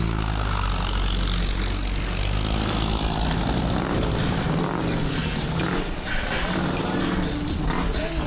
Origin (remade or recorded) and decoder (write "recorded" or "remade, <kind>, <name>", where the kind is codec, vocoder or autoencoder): recorded